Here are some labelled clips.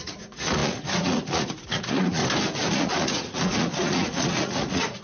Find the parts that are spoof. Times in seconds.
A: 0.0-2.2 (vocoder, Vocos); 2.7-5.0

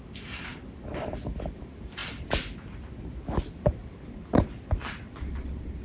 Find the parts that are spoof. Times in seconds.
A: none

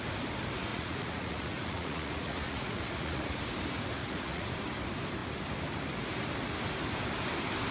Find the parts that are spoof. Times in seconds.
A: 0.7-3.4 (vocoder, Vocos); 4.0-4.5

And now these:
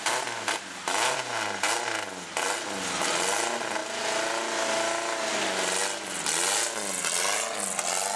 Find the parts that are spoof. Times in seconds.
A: none